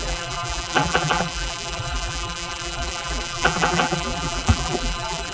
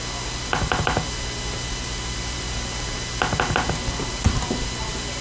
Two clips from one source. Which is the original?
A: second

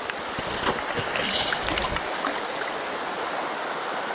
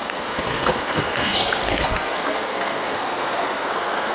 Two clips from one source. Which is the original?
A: first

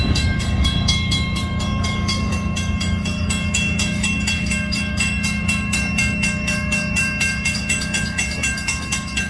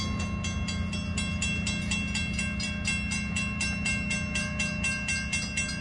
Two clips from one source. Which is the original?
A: second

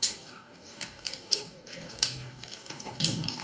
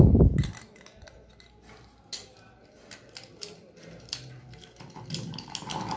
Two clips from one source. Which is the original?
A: second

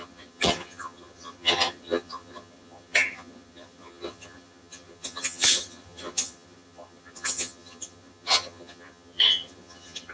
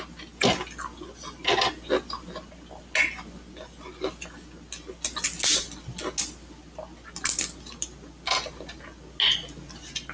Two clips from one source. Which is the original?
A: second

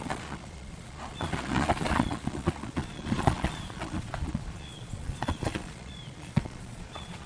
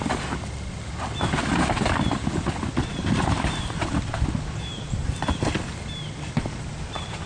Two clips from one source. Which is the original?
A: second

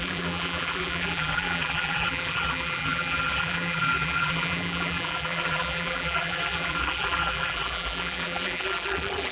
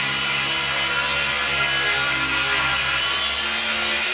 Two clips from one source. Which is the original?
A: second